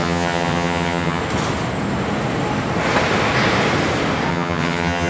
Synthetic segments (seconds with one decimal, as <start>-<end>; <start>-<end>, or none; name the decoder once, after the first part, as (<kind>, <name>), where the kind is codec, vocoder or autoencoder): 0.0-1.2 (vocoder, HiFi-GAN); 4.3-5.1